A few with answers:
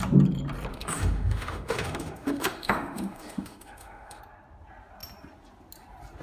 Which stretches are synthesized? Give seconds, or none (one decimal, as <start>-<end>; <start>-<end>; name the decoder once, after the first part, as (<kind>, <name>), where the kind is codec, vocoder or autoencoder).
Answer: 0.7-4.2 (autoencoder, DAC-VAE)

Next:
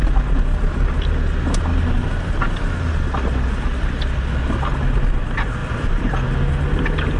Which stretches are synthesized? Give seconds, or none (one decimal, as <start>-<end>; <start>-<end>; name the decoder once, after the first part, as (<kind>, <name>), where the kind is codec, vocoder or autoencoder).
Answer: none

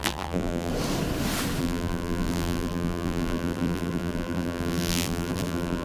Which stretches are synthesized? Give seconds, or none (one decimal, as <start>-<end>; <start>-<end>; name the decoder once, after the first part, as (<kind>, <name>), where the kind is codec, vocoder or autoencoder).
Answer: 0.0-0.7 (vocoder, BigVGAN v2); 1.6-5.8

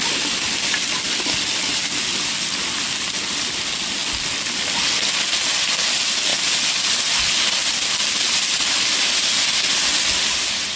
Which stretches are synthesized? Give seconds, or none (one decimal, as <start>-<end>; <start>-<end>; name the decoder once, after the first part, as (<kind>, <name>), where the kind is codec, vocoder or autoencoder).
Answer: none